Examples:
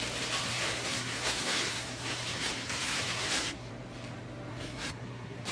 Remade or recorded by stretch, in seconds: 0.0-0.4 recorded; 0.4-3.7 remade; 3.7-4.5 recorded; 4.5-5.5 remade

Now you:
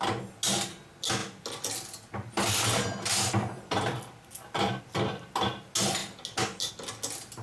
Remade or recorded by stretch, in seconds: 0.0-7.4 recorded

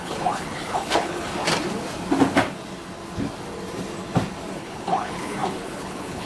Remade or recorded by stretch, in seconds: 0.0-1.3 remade; 1.3-4.5 recorded; 4.5-6.3 remade

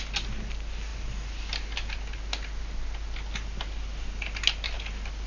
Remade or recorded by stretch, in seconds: 0.0-5.3 recorded

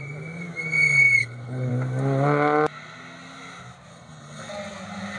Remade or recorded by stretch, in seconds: 0.0-1.2 recorded; 1.2-1.7 remade; 1.7-3.9 recorded; 3.9-4.5 remade; 4.5-5.2 recorded

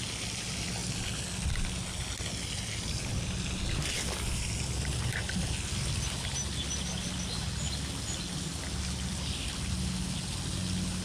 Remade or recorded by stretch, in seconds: 0.0-11.0 recorded

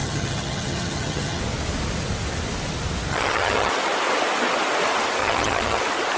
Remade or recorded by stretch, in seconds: 0.0-1.4 remade; 1.4-3.1 recorded; 3.1-3.7 remade; 3.7-5.2 recorded; 5.2-5.8 remade; 5.8-6.2 recorded

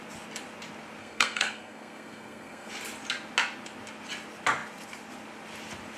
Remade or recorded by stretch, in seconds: 0.0-1.0 recorded; 1.0-2.7 remade; 2.7-6.0 recorded